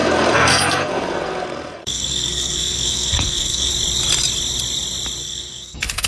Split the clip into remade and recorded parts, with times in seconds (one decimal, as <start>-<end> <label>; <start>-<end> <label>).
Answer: 0.0-3.7 remade; 3.7-5.2 recorded; 5.2-6.1 remade